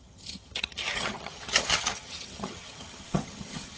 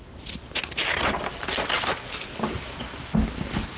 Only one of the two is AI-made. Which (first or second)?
first